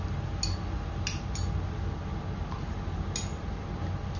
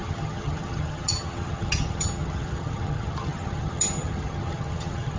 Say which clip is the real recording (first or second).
first